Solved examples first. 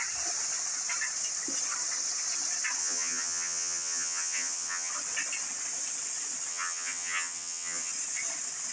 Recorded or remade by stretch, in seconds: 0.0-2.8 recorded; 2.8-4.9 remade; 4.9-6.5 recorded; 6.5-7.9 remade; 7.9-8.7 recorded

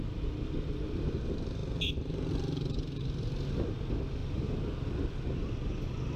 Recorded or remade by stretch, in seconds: 0.0-6.2 recorded